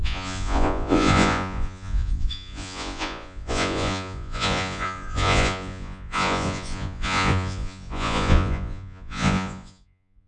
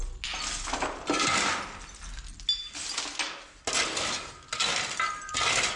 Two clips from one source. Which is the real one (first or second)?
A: second